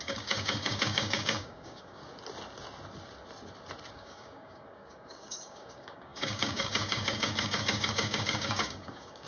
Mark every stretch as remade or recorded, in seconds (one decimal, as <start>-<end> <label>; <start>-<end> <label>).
0.0-2.0 remade; 2.0-3.9 recorded; 3.9-9.3 remade